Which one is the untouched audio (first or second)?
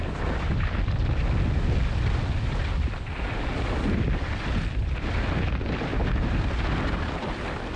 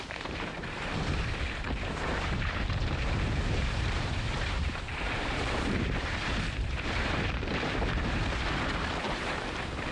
first